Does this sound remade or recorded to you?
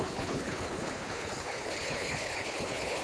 remade